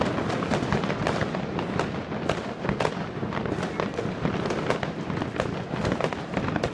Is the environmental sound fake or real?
real